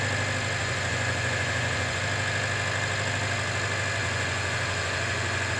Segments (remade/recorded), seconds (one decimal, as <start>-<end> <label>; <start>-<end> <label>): 0.0-0.6 recorded; 0.6-2.0 remade; 2.0-4.0 recorded; 4.0-5.6 remade